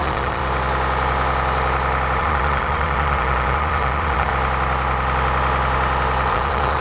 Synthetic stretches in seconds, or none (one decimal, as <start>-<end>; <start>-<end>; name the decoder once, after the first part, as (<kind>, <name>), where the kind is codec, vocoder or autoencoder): 0.0-0.4 (vocoder, Vocos); 2.2-4.3; 6.3-6.8